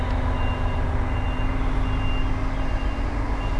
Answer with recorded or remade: recorded